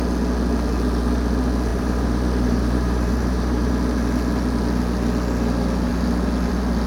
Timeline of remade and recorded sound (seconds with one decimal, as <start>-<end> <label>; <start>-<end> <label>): 0.0-1.7 recorded; 1.7-3.7 remade; 3.7-6.9 recorded